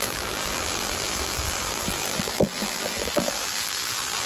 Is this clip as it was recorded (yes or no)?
no